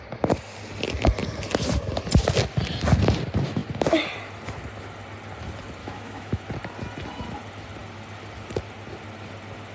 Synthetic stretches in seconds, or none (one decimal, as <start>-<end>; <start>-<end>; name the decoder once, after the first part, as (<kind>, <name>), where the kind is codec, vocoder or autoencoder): 5.8-6.4 (autoencoder, DAC-VAE)